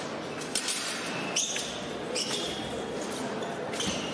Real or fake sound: real